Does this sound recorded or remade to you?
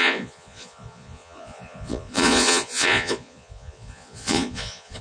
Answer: remade